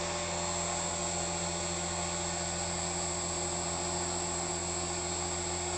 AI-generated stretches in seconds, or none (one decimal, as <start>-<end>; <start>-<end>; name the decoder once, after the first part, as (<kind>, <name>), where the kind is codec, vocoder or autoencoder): none